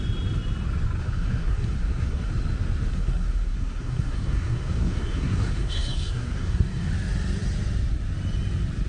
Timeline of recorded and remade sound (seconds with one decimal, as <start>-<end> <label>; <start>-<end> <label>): 0.0-1.0 recorded; 1.0-2.3 remade; 2.3-2.9 recorded; 2.9-6.9 remade; 6.9-8.9 recorded